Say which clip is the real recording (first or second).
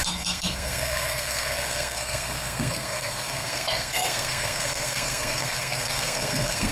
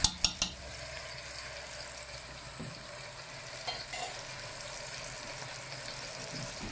second